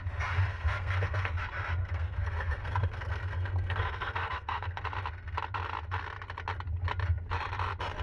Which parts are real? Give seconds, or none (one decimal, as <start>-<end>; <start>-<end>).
0.0-0.5; 1.3-1.8; 4.8-8.0